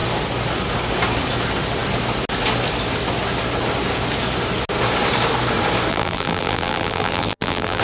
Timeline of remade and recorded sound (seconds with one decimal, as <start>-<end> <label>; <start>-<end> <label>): 0.0-5.9 recorded; 5.9-7.8 remade